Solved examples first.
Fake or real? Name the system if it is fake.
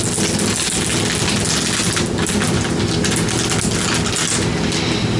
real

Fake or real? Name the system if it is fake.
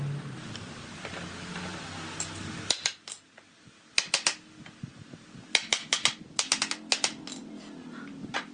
real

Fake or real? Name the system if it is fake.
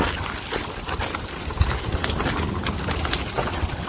real